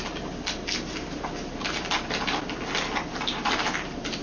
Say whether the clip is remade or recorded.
recorded